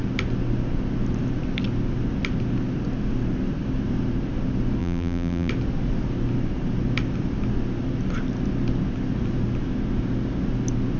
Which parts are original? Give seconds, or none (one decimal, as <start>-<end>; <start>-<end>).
0.0-4.8; 5.5-11.0